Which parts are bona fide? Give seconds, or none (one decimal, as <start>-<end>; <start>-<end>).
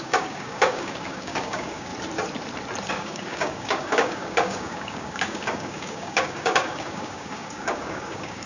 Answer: 1.9-2.9